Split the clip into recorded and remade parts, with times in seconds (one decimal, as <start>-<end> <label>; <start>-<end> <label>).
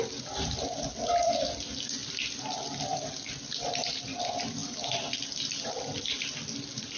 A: 0.0-7.0 recorded